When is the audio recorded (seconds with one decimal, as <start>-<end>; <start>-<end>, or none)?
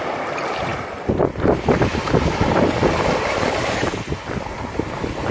none